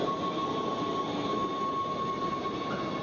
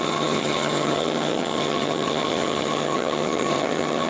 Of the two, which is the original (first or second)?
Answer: first